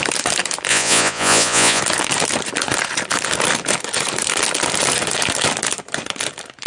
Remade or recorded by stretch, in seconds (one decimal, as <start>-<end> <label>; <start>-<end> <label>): 0.0-0.7 recorded; 0.7-1.8 remade; 1.8-6.7 recorded